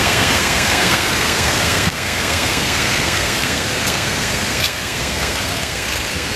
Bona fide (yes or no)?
no